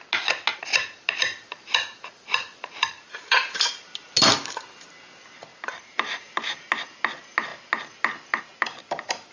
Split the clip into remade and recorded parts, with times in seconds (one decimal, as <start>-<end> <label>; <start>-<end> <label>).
0.0-0.5 recorded; 0.5-4.1 remade; 4.1-5.5 recorded; 5.5-6.7 remade; 6.7-9.3 recorded